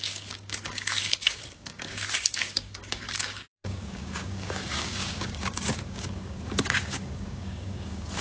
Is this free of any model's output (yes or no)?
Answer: no